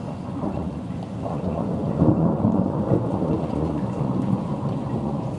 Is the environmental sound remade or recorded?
remade